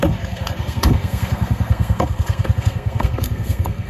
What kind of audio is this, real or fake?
fake